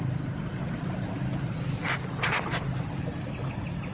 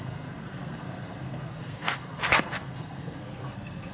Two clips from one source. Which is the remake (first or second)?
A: second